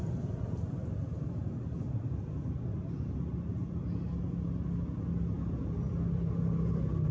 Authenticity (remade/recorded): recorded